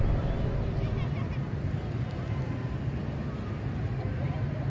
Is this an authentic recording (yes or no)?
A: yes